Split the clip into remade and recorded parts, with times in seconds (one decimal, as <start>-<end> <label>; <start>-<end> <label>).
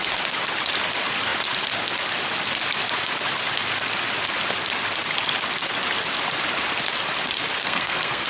0.0-7.6 recorded; 7.6-8.3 remade